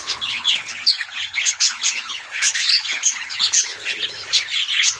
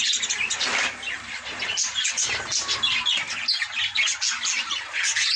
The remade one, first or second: first